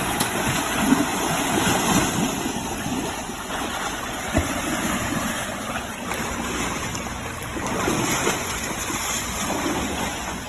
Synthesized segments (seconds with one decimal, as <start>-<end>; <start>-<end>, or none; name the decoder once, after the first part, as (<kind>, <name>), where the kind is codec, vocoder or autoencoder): 0.0-2.0 (vocoder, Vocos); 2.8-5.9; 8.3-10.5